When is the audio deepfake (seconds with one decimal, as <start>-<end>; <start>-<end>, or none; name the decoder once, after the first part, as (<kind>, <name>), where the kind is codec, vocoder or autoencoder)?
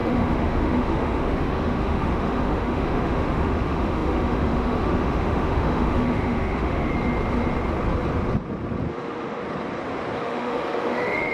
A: 0.0-6.9 (autoencoder, DAC-VAE); 8.9-9.4; 10.2-11.3